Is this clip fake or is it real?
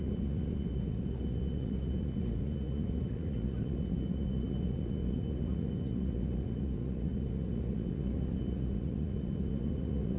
fake